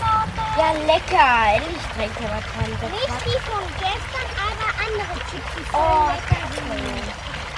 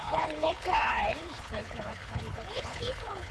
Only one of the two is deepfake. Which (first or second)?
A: second